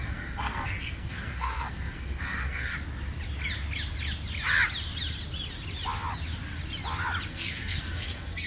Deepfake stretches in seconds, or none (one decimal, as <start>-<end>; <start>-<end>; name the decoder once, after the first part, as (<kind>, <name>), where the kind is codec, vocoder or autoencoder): 0.0-2.7 (codec, SNAC); 7.3-8.5

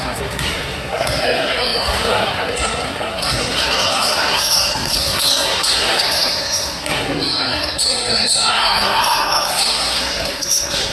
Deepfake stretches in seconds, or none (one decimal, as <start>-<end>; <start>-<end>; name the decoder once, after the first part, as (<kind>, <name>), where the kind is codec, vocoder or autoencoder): 0.0-10.9 (codec, SNAC)

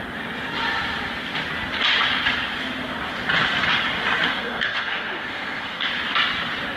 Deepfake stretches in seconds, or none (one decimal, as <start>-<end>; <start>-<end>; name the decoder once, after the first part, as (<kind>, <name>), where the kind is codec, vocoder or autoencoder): 4.3-5.9 (codec, SNAC)

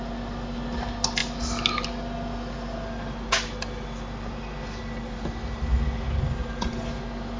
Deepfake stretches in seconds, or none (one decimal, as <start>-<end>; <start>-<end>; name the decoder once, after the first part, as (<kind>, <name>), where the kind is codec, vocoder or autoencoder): none